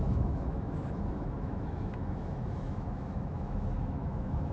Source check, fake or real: fake